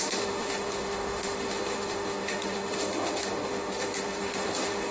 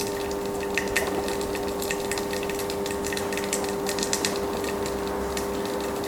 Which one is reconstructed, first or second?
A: first